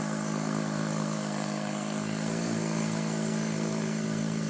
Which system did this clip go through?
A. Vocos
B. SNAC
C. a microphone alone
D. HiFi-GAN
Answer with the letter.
B